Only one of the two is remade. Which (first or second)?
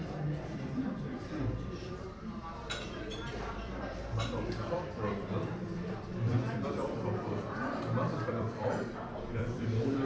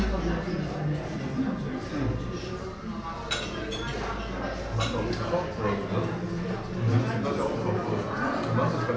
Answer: first